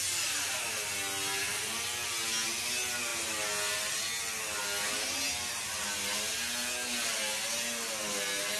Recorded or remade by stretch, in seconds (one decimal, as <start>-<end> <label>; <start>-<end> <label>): 0.0-8.6 recorded